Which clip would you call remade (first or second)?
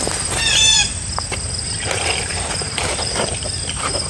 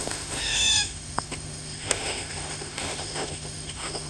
second